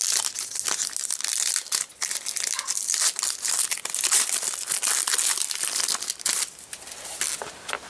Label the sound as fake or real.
real